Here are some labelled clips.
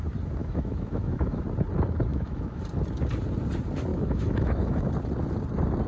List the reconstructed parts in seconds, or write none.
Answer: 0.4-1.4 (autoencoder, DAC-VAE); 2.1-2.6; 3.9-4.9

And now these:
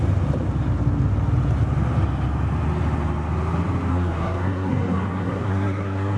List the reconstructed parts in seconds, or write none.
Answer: 3.9-6.2 (codec, SNAC)

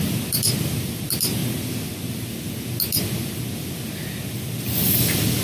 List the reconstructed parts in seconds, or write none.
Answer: none

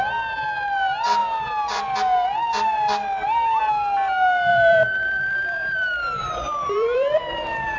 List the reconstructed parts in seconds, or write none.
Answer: 4.5-7.8 (vocoder, BigVGAN v2)

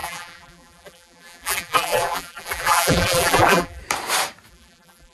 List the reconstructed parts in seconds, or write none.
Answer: 0.0-3.8 (vocoder, BigVGAN v2); 4.5-5.1

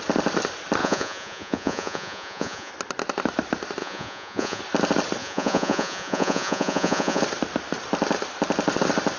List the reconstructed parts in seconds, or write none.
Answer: 0.8-2.7 (vocoder, Vocos); 3.8-4.6; 5.2-7.2